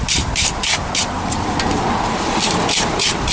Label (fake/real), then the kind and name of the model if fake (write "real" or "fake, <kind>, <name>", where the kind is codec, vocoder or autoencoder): real